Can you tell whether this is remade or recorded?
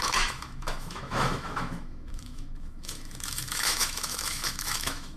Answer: remade